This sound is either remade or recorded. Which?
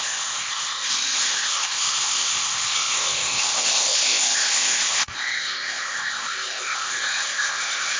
remade